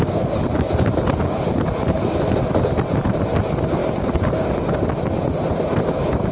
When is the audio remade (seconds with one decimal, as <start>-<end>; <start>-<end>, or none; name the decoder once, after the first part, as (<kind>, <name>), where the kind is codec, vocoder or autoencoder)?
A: none